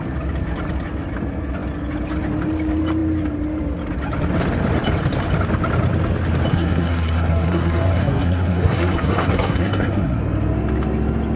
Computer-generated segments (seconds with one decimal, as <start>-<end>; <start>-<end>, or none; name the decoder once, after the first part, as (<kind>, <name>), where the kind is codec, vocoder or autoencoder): 6.5-10.2 (codec, SNAC)